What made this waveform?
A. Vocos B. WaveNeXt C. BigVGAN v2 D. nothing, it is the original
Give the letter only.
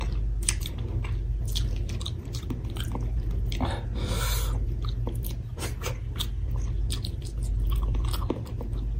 D